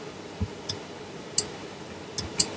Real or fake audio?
real